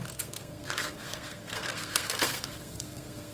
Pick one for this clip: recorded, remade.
remade